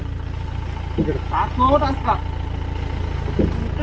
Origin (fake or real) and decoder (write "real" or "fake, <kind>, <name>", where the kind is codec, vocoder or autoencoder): real